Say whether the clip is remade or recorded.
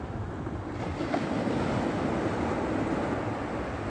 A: recorded